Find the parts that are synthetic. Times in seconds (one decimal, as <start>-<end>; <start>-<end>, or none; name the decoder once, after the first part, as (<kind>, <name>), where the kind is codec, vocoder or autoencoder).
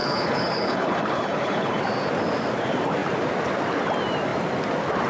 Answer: 0.0-1.8 (codec, HILCodec)